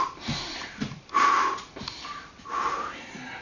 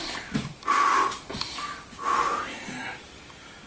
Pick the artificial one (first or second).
first